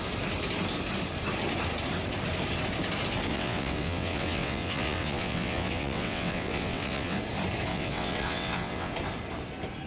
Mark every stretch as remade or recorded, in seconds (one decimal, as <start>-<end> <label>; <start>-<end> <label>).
0.0-3.3 recorded; 3.3-7.2 remade; 7.2-7.7 recorded; 7.7-8.9 remade; 8.9-9.9 recorded